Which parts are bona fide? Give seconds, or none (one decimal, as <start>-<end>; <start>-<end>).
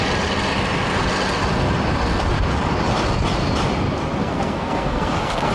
0.0-4.2